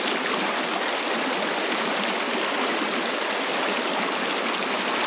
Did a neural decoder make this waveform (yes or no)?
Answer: no